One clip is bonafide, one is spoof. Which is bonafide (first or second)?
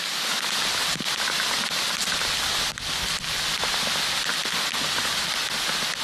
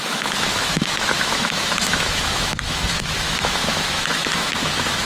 first